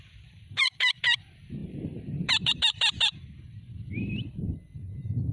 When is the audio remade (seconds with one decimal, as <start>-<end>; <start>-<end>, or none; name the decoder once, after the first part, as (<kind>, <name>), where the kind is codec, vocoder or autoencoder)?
0.0-5.3 (vocoder, BigVGAN v2)

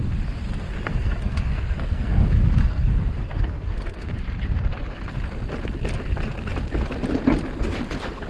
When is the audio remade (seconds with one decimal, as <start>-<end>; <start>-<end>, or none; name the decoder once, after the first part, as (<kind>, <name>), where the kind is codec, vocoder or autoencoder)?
0.9-4.1 (codec, SNAC)

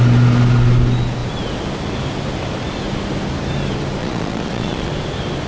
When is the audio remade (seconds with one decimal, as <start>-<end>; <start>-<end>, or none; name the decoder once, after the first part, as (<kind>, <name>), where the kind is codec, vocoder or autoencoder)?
4.0-4.9 (vocoder, Vocos)

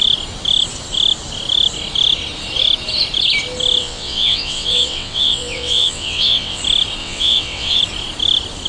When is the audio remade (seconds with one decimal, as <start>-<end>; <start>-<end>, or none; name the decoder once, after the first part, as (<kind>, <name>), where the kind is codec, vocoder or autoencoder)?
3.8-6.6 (vocoder, WaveNeXt); 7.0-7.8

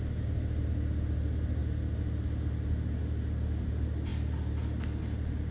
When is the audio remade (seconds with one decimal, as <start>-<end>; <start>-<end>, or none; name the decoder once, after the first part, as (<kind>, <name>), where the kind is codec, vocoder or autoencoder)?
none

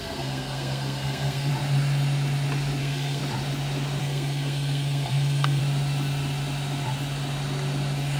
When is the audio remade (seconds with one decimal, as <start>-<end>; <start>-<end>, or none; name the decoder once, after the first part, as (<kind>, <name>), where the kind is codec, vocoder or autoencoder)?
0.0-1.5 (codec, SNAC); 2.8-3.2; 4.0-5.6

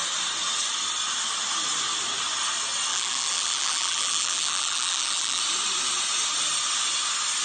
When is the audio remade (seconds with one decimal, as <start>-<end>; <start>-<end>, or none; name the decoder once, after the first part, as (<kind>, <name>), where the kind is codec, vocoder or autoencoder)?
2.9-5.4 (vocoder, BigVGAN v2)

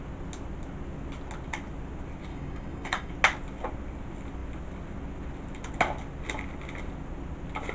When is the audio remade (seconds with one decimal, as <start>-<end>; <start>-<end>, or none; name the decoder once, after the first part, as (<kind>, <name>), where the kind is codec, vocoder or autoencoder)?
2.3-3.1 (codec, DAC)